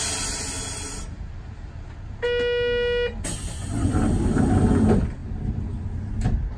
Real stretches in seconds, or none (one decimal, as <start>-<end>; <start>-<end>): 0.0-6.6